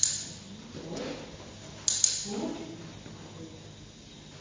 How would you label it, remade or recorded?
recorded